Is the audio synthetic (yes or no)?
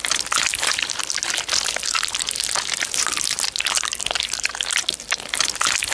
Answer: no